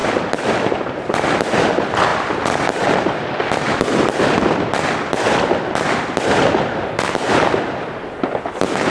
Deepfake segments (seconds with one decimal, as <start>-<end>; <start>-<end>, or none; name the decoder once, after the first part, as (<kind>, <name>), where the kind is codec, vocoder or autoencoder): none